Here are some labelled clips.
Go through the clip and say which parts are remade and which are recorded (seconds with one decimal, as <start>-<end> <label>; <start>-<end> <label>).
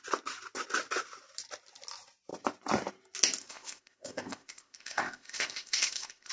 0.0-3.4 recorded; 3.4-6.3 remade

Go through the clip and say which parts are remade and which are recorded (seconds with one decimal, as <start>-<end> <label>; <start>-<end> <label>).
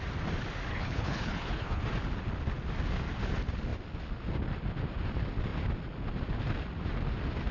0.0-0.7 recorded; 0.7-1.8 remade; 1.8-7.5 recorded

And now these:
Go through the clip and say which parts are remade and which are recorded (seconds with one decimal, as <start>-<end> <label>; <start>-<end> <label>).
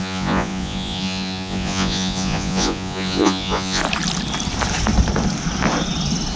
0.0-3.8 remade; 3.8-6.4 recorded